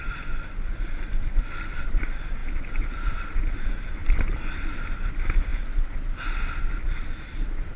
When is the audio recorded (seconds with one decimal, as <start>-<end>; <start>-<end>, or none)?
0.0-7.8